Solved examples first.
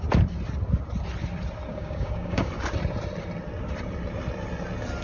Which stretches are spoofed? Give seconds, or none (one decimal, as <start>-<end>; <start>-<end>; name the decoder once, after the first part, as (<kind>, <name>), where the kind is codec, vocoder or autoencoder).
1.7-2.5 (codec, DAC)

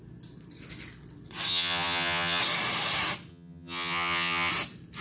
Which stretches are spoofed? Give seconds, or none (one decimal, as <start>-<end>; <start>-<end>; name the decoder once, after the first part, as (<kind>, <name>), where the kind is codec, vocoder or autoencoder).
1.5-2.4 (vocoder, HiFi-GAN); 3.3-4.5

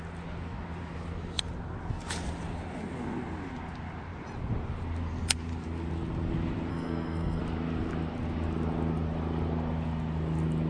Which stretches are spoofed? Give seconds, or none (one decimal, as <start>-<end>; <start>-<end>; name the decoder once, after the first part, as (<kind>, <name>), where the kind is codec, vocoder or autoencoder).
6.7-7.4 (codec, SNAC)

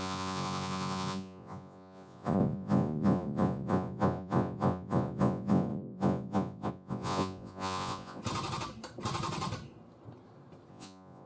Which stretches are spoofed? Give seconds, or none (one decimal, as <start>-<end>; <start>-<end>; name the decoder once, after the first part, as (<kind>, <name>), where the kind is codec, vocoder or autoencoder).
0.0-8.2 (vocoder, Vocos); 10.7-11.3

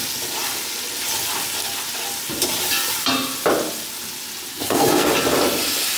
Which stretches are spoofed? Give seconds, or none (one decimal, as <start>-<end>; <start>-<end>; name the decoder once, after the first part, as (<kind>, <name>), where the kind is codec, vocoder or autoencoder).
4.5-5.1 (codec, SNAC)

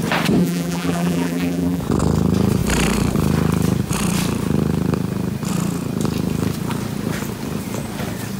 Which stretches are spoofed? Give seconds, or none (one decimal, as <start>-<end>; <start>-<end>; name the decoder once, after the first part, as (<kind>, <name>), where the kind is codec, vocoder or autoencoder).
0.4-1.8 (vocoder, BigVGAN v2)